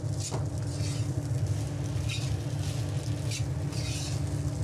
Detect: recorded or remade recorded